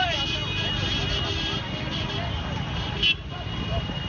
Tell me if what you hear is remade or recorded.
recorded